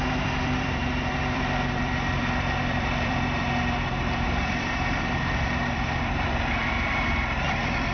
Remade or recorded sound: remade